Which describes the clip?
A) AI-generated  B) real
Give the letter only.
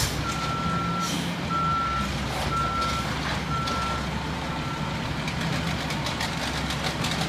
B